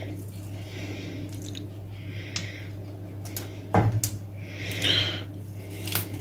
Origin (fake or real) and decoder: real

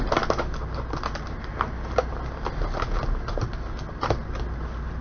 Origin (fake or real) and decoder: real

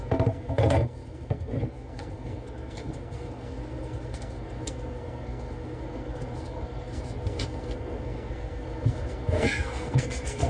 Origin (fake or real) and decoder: fake, codec, SNAC